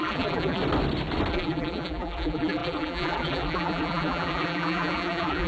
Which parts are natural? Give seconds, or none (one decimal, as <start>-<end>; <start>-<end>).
0.6-1.3